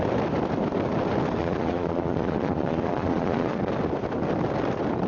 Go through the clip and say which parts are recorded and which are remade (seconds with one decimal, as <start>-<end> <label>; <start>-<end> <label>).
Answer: 0.0-1.4 recorded; 1.4-3.7 remade; 3.7-5.1 recorded